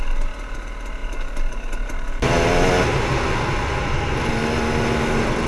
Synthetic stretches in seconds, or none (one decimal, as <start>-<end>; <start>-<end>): none